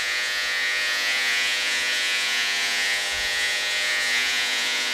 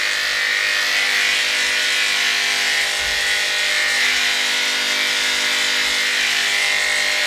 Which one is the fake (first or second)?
first